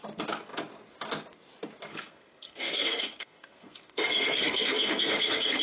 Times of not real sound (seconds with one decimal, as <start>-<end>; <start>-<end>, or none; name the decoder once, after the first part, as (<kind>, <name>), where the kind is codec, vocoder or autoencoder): 1.9-5.6 (codec, SNAC)